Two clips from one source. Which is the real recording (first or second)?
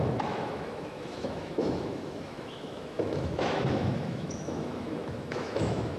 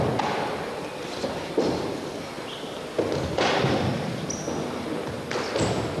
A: second